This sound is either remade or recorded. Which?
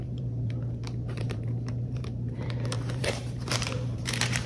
remade